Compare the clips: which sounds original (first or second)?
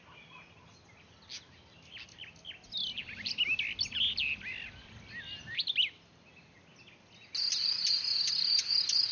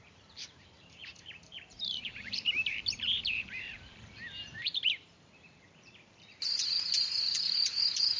first